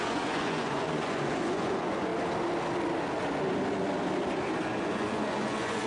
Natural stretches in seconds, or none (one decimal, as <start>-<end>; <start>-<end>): 2.1-4.8